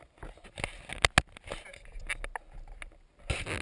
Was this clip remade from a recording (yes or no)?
no